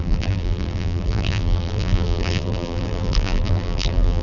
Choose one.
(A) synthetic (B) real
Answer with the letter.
A